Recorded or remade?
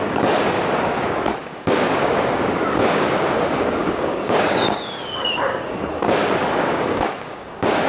remade